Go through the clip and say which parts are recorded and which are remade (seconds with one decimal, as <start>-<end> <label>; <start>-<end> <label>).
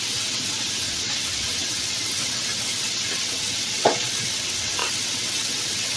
0.0-6.0 remade